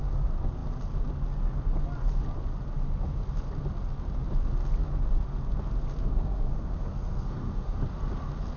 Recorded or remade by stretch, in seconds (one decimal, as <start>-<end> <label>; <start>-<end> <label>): 0.0-6.1 recorded; 6.1-7.8 remade; 7.8-8.6 recorded